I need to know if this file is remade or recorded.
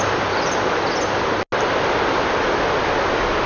recorded